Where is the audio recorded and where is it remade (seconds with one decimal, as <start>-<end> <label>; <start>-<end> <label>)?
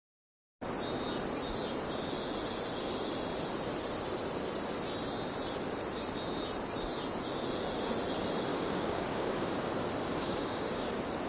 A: 0.0-8.5 recorded; 8.5-9.7 remade; 9.7-10.1 recorded; 10.1-10.9 remade; 10.9-11.3 recorded